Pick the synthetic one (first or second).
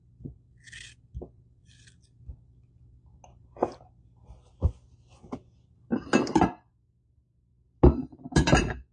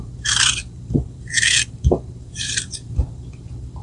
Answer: second